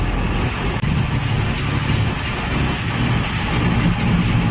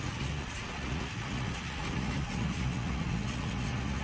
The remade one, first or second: second